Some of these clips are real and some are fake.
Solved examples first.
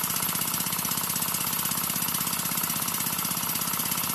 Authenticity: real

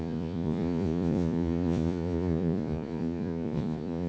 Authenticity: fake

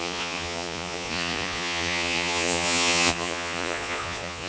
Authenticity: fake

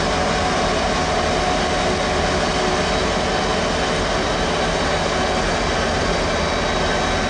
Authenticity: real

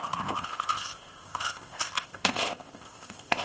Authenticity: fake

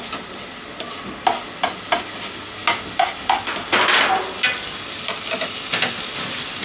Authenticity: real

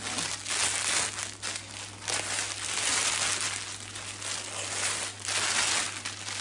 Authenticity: real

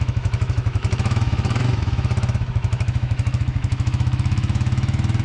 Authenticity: fake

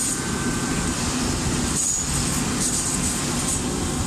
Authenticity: real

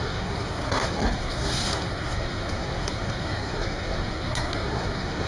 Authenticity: fake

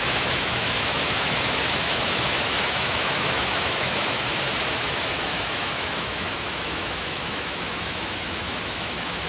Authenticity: fake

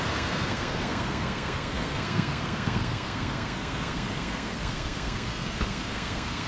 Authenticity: fake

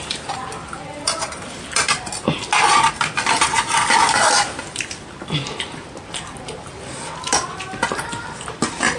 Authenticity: real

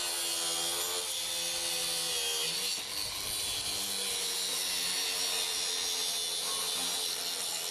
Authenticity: real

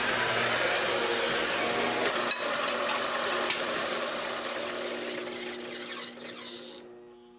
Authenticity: real